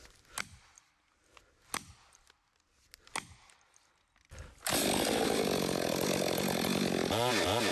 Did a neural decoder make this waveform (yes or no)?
no